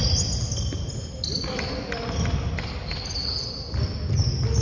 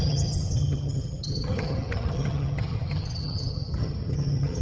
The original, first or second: first